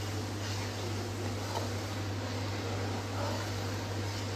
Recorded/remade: recorded